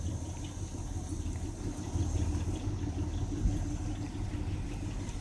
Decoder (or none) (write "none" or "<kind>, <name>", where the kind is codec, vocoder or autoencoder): none